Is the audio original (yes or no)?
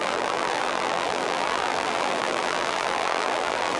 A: no